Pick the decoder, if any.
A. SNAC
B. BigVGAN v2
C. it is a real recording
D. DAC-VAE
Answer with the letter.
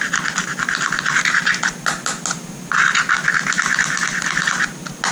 C